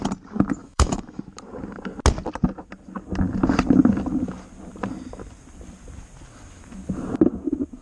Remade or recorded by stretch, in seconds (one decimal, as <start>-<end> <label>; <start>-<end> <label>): 0.0-0.6 recorded; 0.6-1.2 remade; 1.2-7.8 recorded